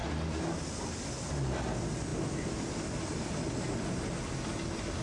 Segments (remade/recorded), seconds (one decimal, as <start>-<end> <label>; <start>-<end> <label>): 0.0-5.0 recorded